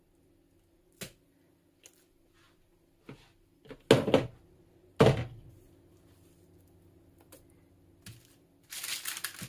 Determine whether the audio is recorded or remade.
recorded